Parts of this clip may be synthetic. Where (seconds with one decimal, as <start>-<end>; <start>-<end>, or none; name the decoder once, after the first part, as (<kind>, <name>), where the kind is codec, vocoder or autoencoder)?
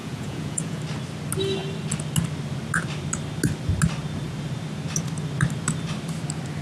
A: 0.0-0.8 (vocoder, Vocos)